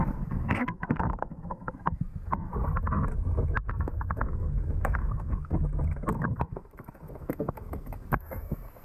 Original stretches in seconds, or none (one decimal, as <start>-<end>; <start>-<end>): 2.5-3.7; 5.6-6.1